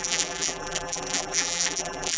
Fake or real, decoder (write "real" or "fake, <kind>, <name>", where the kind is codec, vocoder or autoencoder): fake, vocoder, BigVGAN v2